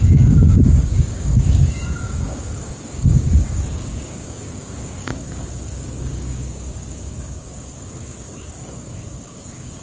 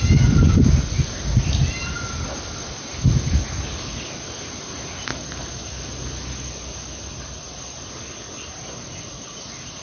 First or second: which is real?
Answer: second